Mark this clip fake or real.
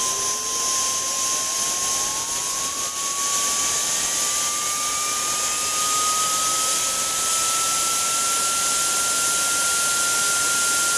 real